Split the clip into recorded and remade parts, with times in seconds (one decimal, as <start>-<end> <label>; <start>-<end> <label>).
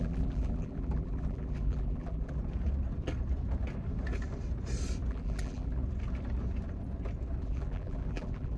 0.0-2.4 remade; 2.4-5.1 recorded; 5.1-5.8 remade; 5.8-7.4 recorded; 7.4-8.6 remade